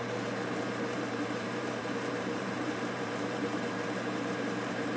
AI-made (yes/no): yes